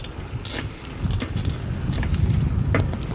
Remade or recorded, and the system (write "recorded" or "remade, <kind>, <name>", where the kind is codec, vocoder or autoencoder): recorded